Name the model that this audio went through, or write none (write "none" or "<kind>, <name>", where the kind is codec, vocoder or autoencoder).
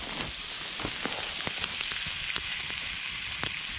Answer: none